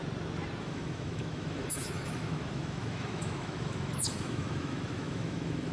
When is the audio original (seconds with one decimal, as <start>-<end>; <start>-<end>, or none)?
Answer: 0.0-0.6